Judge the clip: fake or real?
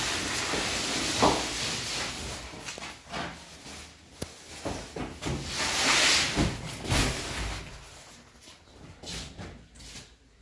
real